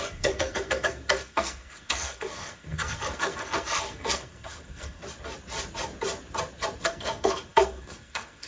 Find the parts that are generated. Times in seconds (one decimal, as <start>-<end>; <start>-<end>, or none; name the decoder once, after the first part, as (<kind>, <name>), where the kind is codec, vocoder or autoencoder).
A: 0.0-5.0 (codec, SNAC); 6.8-8.5